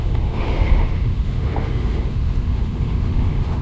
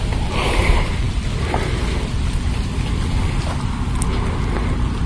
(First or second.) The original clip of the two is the second